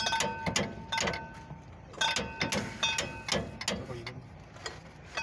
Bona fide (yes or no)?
yes